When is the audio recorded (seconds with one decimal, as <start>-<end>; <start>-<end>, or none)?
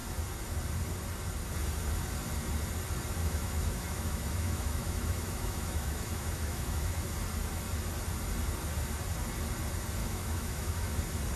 0.0-3.2; 7.0-10.0; 10.9-11.4